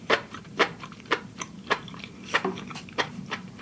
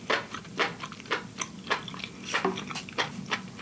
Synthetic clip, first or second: first